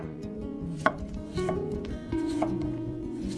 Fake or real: fake